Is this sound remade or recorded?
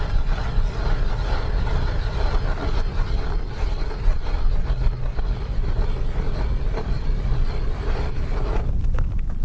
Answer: recorded